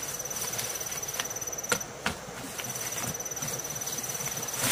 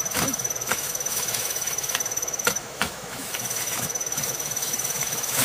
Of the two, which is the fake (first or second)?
second